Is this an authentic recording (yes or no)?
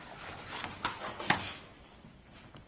yes